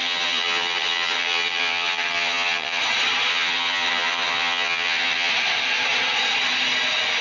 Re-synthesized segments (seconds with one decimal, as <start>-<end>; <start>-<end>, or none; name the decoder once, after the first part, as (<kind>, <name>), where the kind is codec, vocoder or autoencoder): 0.0-2.8 (vocoder, HiFi-GAN); 3.3-5.3